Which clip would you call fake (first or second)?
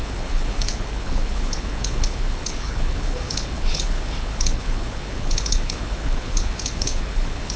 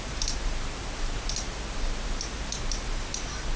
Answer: first